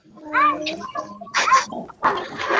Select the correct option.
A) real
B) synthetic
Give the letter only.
A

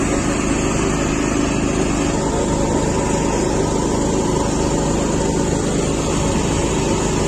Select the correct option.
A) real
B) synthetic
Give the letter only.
A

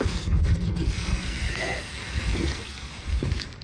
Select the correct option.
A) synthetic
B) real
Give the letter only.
A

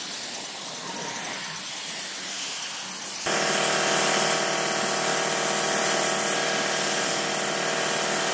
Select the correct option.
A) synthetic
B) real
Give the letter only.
B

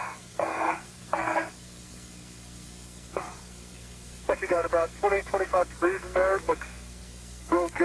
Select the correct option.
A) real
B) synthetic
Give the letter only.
B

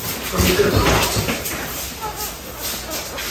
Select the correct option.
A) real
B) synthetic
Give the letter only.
A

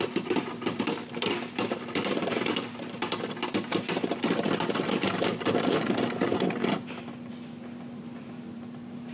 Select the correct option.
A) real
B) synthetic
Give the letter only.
B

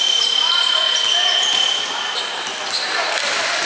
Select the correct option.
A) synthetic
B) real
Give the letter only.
A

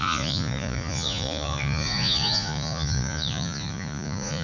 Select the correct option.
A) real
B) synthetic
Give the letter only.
B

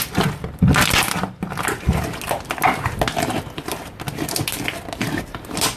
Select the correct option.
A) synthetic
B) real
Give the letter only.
B